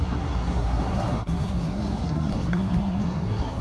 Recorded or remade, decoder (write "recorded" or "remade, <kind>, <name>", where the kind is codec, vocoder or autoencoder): remade, codec, SNAC